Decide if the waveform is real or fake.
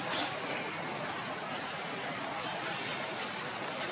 real